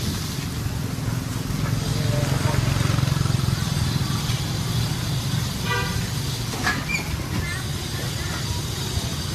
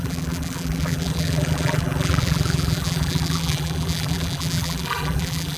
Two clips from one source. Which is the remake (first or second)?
second